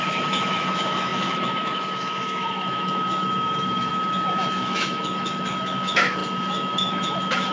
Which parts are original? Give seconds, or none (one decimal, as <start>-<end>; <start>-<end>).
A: none